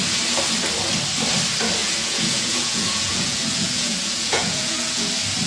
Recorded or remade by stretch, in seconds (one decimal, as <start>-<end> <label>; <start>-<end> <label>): 0.0-1.8 recorded; 1.8-5.1 remade; 5.1-5.5 recorded

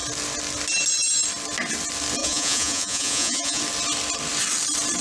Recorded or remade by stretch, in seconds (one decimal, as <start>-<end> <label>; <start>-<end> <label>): 0.0-2.2 recorded; 2.2-3.6 remade; 3.6-5.0 recorded

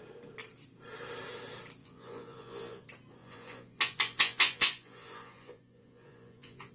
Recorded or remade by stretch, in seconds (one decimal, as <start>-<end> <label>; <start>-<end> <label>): 0.0-1.8 recorded; 1.8-2.8 remade; 2.8-3.2 recorded; 3.2-6.7 remade

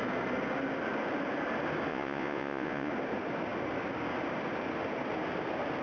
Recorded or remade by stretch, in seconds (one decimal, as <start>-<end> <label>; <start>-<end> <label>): 0.0-1.9 recorded; 1.9-2.9 remade; 2.9-5.8 recorded

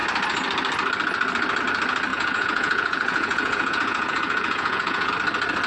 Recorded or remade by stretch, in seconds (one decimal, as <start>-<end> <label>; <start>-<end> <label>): 0.0-2.1 recorded; 2.1-5.1 remade; 5.1-5.7 recorded